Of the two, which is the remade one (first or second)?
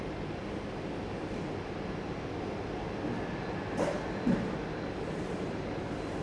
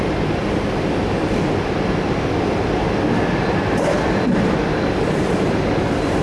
second